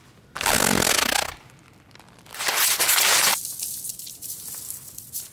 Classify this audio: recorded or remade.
recorded